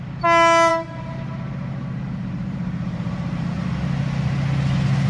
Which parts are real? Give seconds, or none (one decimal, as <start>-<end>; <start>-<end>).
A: 0.0-0.7; 3.8-5.1